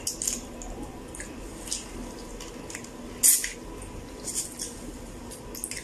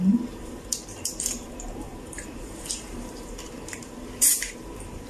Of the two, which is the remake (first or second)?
second